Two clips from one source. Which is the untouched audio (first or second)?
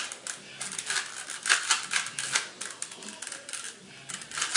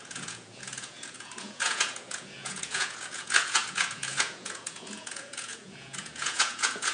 first